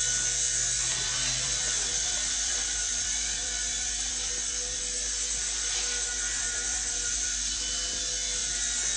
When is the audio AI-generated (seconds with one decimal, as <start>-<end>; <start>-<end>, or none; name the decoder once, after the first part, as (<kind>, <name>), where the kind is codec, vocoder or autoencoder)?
0.9-4.8 (vocoder, BigVGAN v2); 6.1-8.0